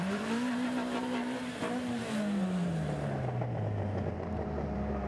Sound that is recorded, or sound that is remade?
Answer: remade